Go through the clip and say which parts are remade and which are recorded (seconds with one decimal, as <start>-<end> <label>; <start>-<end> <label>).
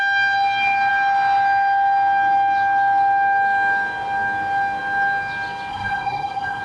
0.0-5.7 recorded; 5.7-6.6 remade